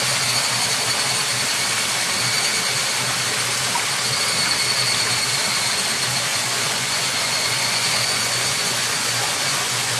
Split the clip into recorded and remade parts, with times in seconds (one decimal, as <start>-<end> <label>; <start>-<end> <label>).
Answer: 0.0-6.3 recorded; 6.3-10.0 remade

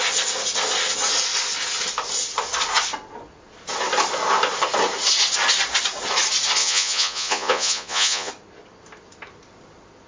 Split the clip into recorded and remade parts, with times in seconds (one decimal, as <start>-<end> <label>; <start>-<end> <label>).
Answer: 0.0-6.6 recorded; 6.6-8.3 remade; 8.3-10.1 recorded

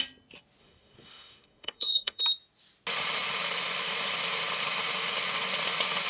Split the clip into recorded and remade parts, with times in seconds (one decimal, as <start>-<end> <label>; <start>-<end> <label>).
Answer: 0.0-0.6 recorded; 0.6-2.2 remade; 2.2-6.1 recorded

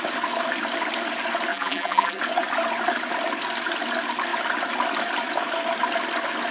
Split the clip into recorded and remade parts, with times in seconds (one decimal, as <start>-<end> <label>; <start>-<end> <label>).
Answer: 0.0-1.5 recorded; 1.5-2.2 remade; 2.2-6.5 recorded